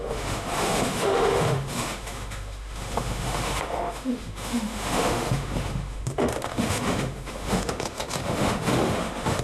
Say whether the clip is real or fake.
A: fake